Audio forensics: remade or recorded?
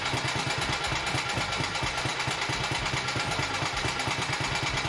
recorded